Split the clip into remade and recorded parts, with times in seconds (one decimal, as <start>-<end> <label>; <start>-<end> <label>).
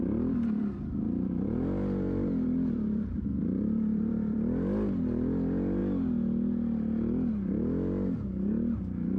0.0-5.8 remade; 5.8-7.3 recorded; 7.3-9.2 remade